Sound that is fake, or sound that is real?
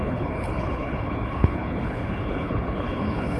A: fake